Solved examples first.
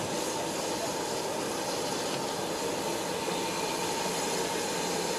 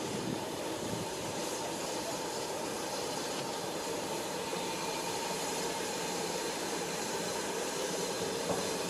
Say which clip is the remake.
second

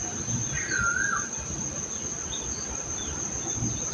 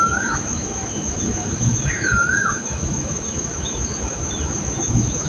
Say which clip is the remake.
second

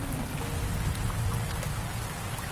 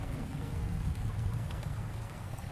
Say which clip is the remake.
second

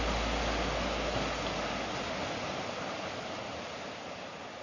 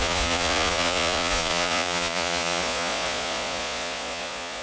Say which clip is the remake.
second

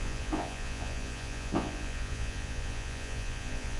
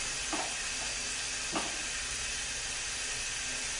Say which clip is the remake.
first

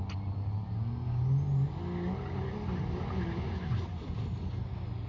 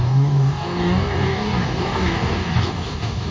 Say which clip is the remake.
second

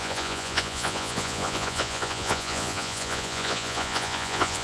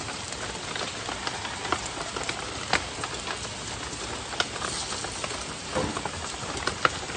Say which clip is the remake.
first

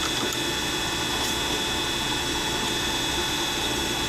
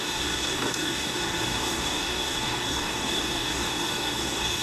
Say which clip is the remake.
second